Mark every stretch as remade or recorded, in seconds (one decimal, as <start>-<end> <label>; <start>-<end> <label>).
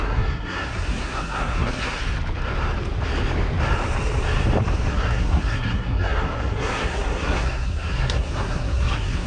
0.0-2.0 remade; 2.0-4.9 recorded; 4.9-9.3 remade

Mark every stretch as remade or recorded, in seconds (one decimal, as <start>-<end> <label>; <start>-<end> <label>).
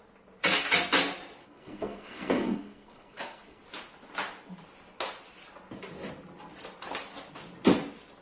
0.0-1.4 recorded; 1.4-3.6 remade; 3.6-8.2 recorded